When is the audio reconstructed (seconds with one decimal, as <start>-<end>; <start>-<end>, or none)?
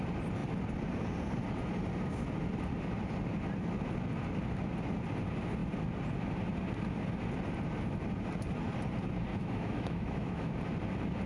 9.3-10.5